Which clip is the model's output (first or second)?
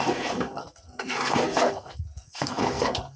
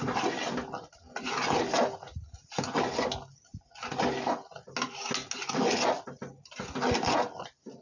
first